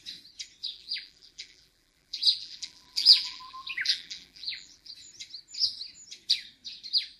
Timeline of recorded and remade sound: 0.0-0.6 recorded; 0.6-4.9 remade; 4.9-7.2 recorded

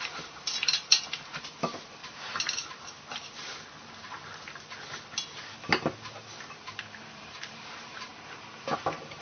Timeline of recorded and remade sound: 0.0-2.0 remade; 2.0-6.5 recorded; 6.5-8.1 remade; 8.1-9.2 recorded

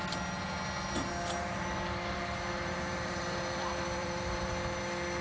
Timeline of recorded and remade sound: 0.0-1.4 recorded; 1.4-4.5 remade; 4.5-5.2 recorded